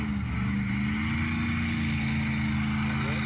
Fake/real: real